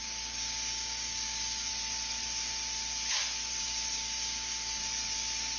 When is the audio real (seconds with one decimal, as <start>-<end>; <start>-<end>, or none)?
1.7-3.6; 4.8-5.6